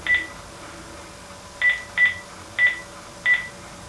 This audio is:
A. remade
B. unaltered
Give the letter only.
B